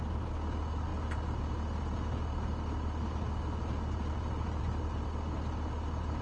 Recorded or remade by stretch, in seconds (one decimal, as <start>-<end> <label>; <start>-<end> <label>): 0.0-6.2 recorded